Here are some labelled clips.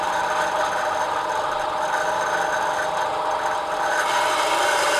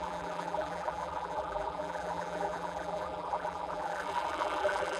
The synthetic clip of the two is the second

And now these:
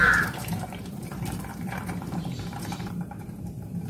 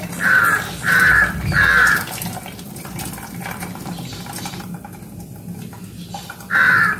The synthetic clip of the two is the first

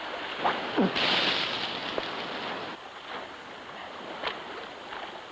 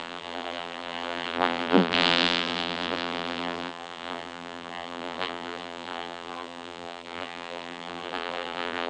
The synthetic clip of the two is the second